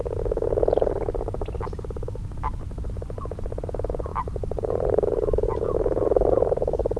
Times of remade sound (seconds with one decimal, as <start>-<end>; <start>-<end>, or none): 4.1-5.5